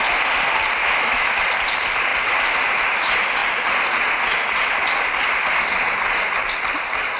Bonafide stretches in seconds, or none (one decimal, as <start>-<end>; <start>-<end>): 0.0-0.8; 1.4-7.2